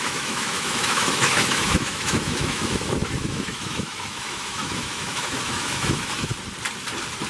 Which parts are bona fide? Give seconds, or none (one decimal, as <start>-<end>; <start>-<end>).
6.3-7.3